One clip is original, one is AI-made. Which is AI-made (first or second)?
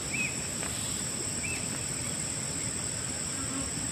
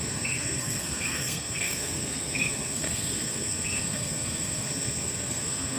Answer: second